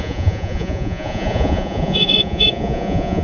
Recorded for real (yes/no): no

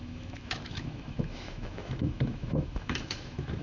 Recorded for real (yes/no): no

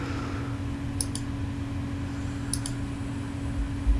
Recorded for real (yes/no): yes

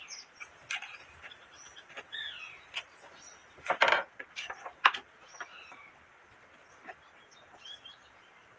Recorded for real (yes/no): yes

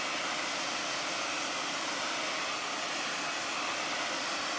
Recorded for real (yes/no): yes